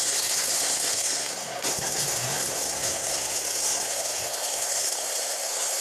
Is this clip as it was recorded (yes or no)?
no